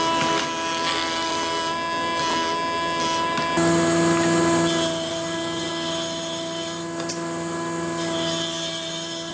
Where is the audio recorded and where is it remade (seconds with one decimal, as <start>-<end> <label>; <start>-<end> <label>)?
0.0-5.1 recorded; 5.1-5.7 remade; 5.7-9.3 recorded